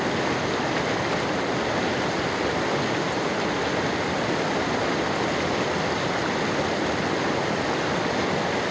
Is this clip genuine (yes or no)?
yes